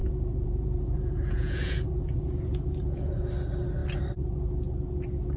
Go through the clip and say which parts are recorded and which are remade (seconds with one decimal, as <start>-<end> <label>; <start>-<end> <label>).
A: 0.0-3.2 remade; 3.2-5.4 recorded